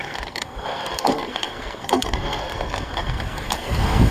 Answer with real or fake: fake